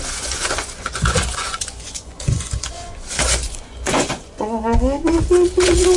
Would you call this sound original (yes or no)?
no